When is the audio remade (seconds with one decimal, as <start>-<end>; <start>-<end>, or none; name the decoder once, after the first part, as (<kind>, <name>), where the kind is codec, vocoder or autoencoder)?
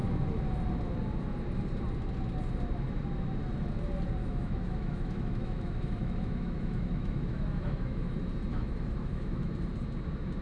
4.2-8.1 (autoencoder, DAC-VAE); 8.5-9.5